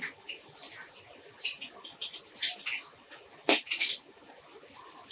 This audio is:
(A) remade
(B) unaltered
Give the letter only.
B